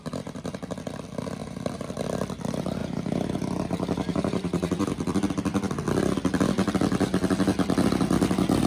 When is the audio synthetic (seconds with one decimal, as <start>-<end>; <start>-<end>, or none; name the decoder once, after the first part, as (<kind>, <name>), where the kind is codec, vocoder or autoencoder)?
1.4-2.0 (vocoder, BigVGAN v2); 2.8-4.9